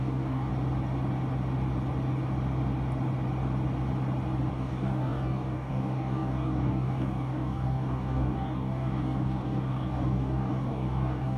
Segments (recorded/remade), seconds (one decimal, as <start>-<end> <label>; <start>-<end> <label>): 0.0-0.5 remade; 0.5-4.5 recorded; 4.5-11.4 remade